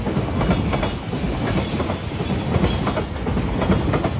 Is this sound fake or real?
real